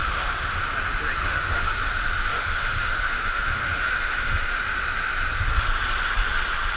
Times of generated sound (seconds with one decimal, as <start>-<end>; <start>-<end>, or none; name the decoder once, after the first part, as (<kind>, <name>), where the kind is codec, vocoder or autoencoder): 0.0-0.6 (autoencoder, DAC-VAE); 1.2-1.7; 2.3-4.6